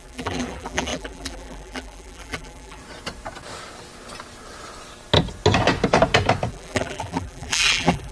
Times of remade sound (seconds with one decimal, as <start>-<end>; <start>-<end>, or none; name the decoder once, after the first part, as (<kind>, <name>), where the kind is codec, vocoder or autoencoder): 0.0-2.8 (vocoder, BigVGAN v2); 6.5-8.1